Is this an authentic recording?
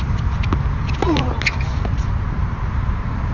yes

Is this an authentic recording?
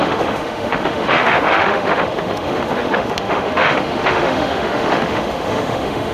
no